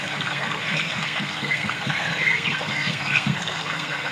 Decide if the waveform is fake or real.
fake